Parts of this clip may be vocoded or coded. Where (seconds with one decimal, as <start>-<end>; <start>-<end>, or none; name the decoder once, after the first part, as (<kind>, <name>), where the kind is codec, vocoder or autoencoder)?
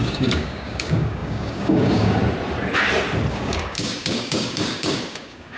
0.0-2.2 (codec, DAC); 3.3-5.6